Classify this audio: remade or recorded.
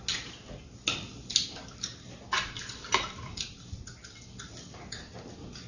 recorded